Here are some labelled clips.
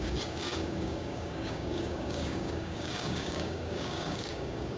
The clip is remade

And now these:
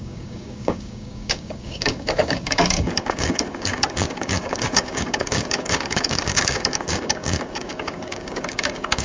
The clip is remade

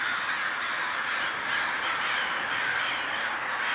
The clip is recorded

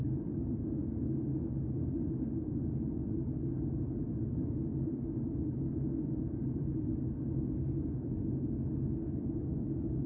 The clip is remade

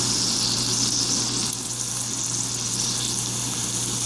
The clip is recorded